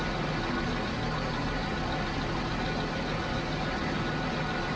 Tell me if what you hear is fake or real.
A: real